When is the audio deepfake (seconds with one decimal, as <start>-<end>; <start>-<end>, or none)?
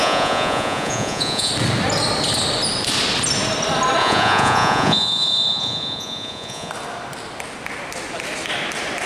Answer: 0.0-1.5; 4.0-6.7